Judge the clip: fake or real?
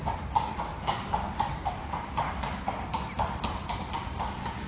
real